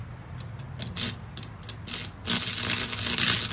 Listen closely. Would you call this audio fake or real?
real